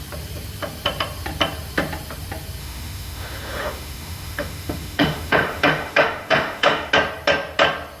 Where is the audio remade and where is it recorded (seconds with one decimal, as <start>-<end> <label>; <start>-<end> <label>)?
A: 0.0-2.6 recorded; 2.6-6.9 remade; 6.9-8.0 recorded